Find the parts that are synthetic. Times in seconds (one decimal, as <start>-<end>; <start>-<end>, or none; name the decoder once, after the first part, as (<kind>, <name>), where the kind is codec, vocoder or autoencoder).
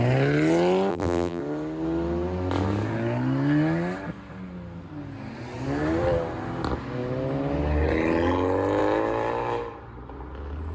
0.9-1.4 (vocoder, BigVGAN v2)